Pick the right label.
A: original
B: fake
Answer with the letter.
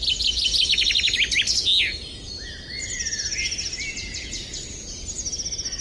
A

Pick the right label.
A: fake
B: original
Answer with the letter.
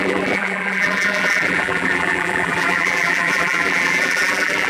A